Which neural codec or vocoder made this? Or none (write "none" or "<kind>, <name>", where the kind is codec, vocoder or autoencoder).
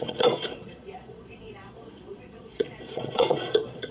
vocoder, Vocos